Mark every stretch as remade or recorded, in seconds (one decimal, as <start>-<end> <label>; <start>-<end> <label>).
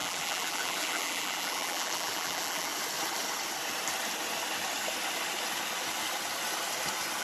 0.0-2.7 remade; 2.7-7.2 recorded